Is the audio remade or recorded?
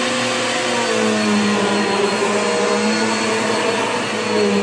recorded